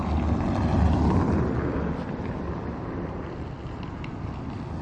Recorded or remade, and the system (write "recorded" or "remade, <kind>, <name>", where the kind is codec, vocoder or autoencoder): recorded